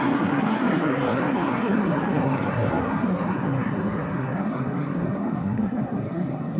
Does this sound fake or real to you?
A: fake